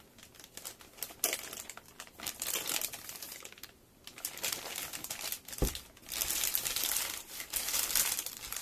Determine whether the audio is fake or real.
real